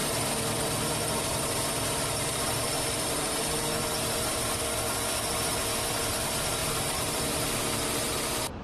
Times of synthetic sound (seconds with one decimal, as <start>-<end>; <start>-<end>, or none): 0.0-4.5; 6.6-7.5